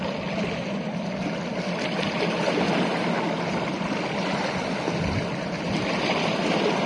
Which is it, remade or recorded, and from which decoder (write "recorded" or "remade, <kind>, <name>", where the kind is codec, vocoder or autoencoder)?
recorded